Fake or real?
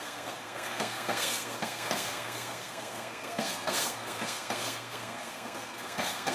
fake